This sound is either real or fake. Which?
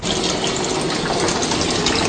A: real